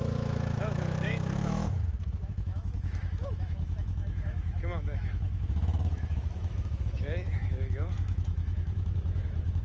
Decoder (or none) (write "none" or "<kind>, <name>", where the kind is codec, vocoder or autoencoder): autoencoder, DAC-VAE